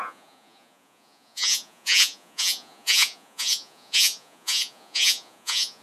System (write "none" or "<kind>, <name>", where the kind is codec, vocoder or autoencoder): vocoder, Vocos